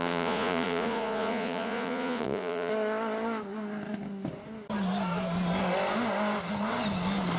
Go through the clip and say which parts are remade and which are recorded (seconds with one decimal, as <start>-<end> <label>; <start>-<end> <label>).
0.0-2.7 remade; 2.7-7.4 recorded